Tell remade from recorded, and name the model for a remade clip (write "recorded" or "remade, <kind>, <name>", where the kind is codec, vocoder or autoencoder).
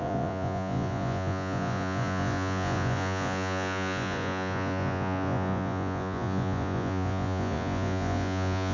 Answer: remade, vocoder, Vocos